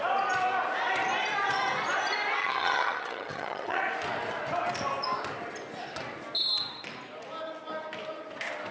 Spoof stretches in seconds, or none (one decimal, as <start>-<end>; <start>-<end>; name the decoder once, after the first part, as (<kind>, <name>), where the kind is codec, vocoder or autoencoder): 2.4-3.8 (vocoder, HiFi-GAN)